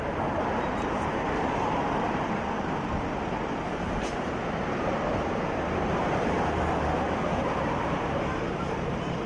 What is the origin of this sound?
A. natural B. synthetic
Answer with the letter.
B